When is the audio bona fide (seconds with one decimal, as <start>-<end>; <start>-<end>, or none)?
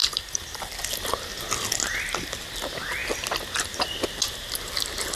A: 0.8-5.2